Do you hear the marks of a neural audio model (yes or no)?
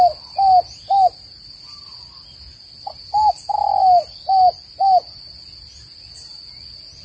no